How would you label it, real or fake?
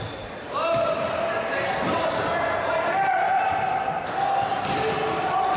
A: real